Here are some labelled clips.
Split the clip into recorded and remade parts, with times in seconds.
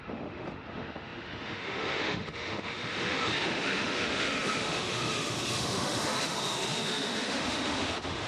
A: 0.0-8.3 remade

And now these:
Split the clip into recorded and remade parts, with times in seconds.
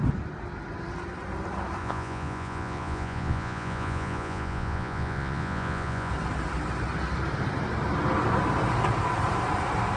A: 0.0-1.8 recorded; 1.8-6.1 remade; 6.1-10.0 recorded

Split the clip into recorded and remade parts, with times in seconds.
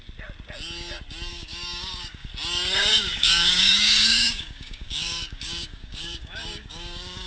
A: 0.0-1.3 recorded; 1.3-2.3 remade; 2.3-2.9 recorded; 2.9-7.3 remade